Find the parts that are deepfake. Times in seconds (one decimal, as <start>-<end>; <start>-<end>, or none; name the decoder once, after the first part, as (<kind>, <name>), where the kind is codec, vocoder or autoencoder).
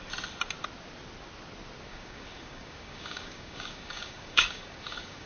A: 1.9-5.3 (codec, DAC)